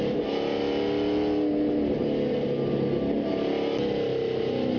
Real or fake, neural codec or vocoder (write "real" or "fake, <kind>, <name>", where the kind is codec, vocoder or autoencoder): real